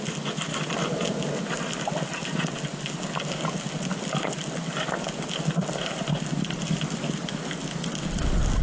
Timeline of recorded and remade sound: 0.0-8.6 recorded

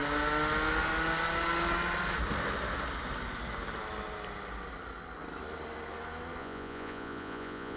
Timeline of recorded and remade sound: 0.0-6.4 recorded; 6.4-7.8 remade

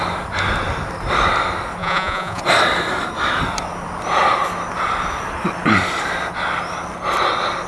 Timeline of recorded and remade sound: 0.0-1.8 recorded; 1.8-2.4 remade; 2.4-7.7 recorded

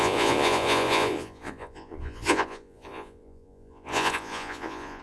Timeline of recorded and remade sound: 0.0-5.0 remade

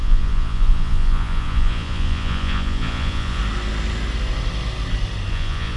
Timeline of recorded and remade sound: 0.0-3.4 remade; 3.4-5.3 recorded; 5.3-5.8 remade

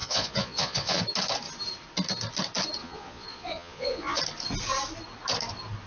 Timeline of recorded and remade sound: 0.0-1.0 remade; 1.0-2.8 recorded; 2.8-4.2 remade; 4.2-5.9 recorded

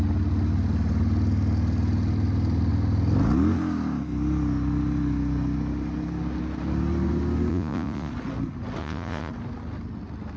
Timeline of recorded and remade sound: 0.0-7.5 recorded; 7.5-8.1 remade; 8.1-8.8 recorded; 8.8-9.3 remade; 9.3-10.4 recorded

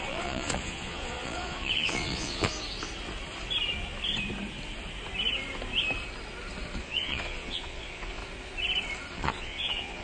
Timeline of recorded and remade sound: 0.0-2.5 remade; 2.5-6.8 recorded; 6.8-8.2 remade; 8.2-9.1 recorded; 9.1-10.0 remade